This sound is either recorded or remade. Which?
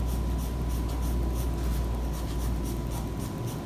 recorded